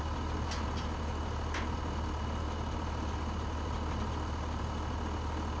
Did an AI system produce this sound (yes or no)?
no